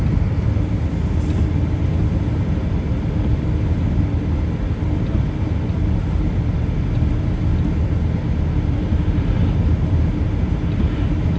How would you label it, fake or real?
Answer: real